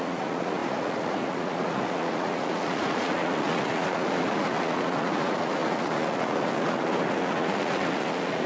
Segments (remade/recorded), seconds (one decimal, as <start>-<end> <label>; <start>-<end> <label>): 0.0-8.5 remade